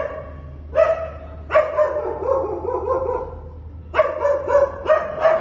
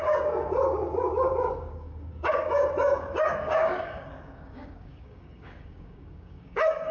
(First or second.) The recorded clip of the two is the first